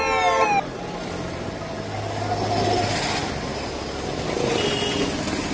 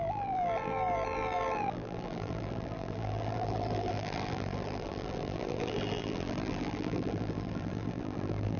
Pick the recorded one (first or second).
first